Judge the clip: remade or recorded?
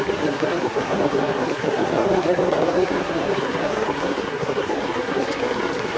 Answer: remade